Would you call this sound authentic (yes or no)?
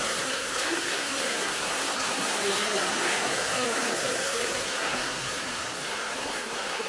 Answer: no